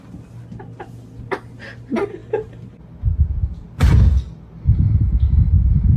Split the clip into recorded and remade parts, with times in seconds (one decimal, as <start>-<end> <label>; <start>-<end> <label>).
0.0-6.0 recorded